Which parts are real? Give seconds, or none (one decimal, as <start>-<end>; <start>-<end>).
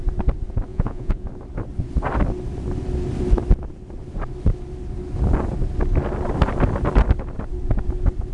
0.0-0.7; 1.3-8.3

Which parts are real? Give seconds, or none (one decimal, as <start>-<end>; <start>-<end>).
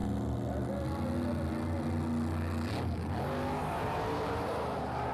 0.0-3.6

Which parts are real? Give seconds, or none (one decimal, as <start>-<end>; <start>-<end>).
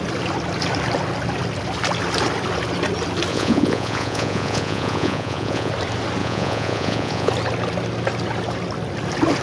0.0-3.3; 5.7-6.2; 7.3-9.4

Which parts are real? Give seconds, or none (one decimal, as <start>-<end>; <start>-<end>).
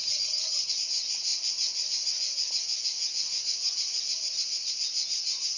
0.7-5.6